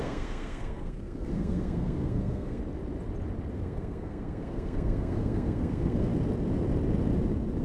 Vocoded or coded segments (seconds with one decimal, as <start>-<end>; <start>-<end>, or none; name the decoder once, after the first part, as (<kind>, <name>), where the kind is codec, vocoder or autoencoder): 0.0-2.6 (codec, SNAC); 3.5-6.1